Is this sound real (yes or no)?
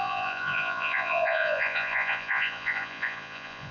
no